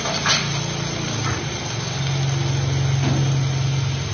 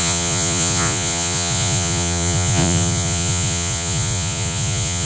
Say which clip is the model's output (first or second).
second